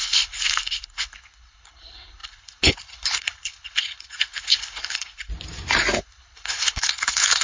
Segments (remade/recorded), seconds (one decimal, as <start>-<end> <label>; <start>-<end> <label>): 0.0-5.3 remade; 5.3-6.0 recorded; 6.0-7.4 remade